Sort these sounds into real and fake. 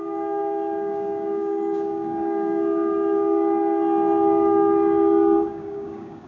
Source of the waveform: fake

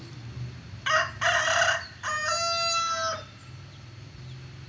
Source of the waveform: real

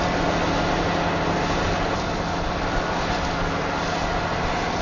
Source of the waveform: real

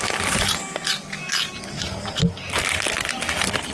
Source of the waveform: real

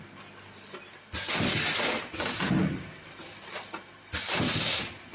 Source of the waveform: real